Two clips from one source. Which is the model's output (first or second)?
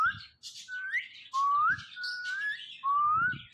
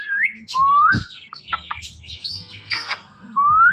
second